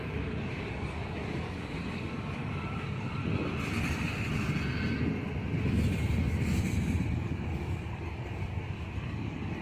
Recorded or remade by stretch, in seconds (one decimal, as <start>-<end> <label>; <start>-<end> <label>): 0.0-3.2 remade; 3.2-7.1 recorded; 7.1-9.6 remade